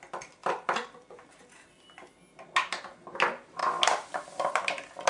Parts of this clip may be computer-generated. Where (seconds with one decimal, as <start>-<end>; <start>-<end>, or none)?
0.4-2.1